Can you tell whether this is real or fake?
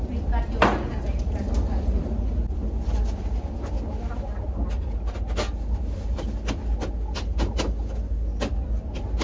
real